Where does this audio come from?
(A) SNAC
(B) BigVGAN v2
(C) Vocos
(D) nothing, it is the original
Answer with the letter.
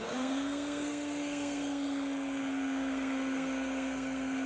A